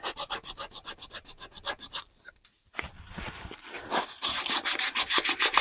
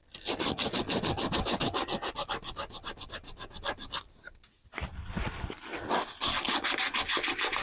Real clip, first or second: second